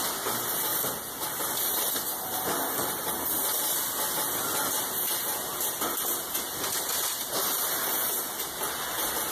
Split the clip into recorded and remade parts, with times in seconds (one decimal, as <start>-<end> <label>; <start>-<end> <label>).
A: 0.0-9.3 recorded